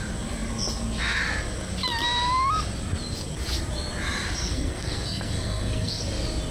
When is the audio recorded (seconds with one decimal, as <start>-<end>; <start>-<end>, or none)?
0.0-4.4; 6.0-6.5